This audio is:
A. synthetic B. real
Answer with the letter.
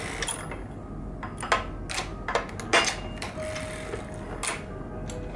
B